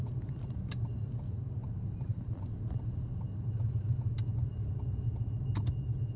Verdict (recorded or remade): recorded